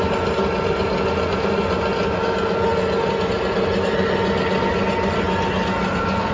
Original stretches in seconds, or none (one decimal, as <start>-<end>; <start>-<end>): 0.0-6.3